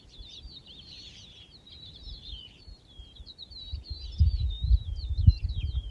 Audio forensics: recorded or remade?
remade